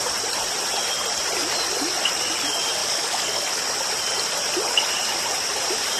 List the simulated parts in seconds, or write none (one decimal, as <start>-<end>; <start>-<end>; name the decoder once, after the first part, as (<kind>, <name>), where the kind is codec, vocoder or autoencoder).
2.8-3.6 (codec, DAC)